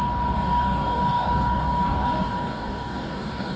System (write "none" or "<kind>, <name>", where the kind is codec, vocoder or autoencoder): codec, DAC